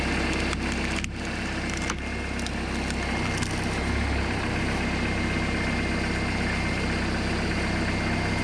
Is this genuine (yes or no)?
yes